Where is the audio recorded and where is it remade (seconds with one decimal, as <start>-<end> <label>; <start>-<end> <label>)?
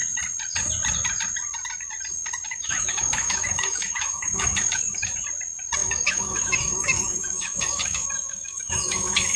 0.0-2.5 recorded; 2.5-5.1 remade; 5.1-5.8 recorded; 5.8-9.4 remade